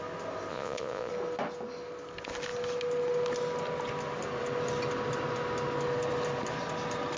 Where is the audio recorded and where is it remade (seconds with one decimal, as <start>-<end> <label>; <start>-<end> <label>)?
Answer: 0.0-0.5 recorded; 0.5-1.1 remade; 1.1-7.2 recorded